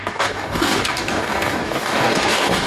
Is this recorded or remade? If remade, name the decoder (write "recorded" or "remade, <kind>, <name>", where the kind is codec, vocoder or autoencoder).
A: remade, codec, DAC